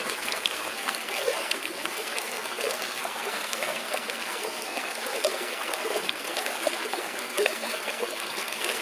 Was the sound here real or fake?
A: fake